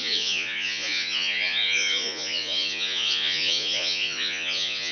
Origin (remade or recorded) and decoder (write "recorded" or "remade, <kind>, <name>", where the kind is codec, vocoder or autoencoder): remade, vocoder, Vocos